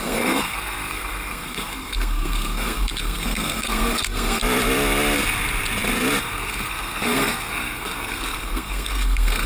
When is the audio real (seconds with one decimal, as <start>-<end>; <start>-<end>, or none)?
4.4-6.2